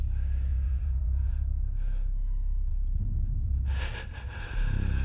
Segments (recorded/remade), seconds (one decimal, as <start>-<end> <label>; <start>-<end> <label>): 0.0-0.5 recorded; 0.5-1.3 remade; 1.3-5.0 recorded